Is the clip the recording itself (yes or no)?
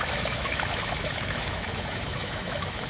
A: no